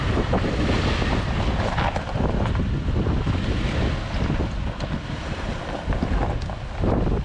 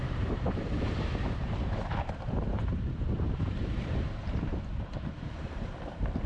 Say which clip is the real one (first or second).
first